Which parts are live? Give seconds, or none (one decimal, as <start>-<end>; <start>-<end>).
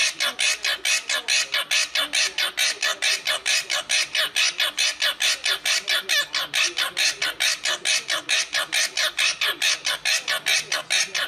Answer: 0.0-11.3